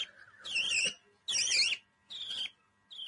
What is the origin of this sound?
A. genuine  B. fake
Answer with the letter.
A